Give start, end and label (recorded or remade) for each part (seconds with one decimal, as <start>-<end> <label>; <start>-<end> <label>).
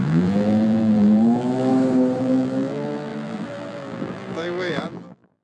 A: 0.0-1.7 remade; 1.7-2.2 recorded; 2.2-5.4 remade